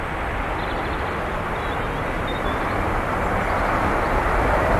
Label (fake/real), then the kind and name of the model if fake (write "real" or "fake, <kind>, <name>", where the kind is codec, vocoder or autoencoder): real